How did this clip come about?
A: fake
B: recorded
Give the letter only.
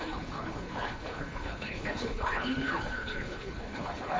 A